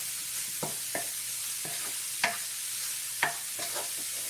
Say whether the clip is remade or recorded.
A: recorded